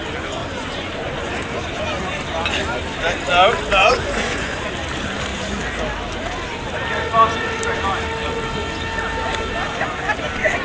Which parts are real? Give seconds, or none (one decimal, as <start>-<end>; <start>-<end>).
0.0-0.4; 1.3-3.8; 4.6-10.6